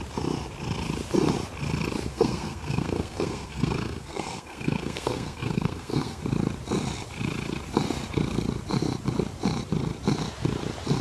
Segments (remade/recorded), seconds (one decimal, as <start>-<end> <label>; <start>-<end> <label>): 0.0-2.1 recorded; 2.1-6.2 remade; 6.2-11.0 recorded